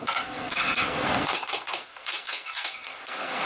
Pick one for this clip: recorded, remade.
remade